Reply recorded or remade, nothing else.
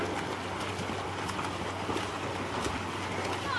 recorded